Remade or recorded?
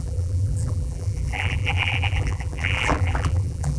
remade